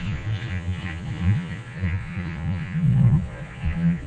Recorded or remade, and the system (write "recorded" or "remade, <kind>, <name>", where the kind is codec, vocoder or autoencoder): remade, vocoder, Vocos